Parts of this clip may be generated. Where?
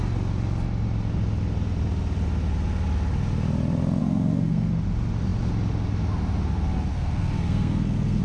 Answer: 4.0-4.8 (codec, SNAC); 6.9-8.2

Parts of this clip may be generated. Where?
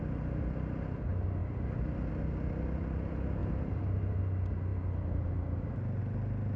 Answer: none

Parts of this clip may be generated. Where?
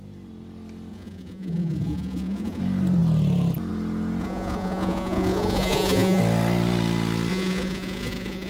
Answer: 0.9-2.6 (vocoder, Vocos); 4.2-6.2; 7.3-8.5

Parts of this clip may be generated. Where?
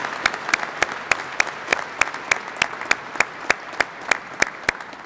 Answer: none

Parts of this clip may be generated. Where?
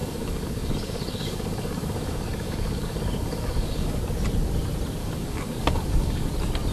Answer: 0.0-4.0 (codec, DAC); 5.0-6.3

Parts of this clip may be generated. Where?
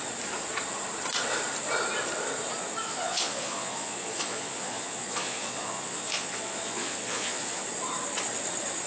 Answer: 2.8-7.6 (vocoder, Vocos)